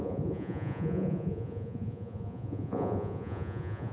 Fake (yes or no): yes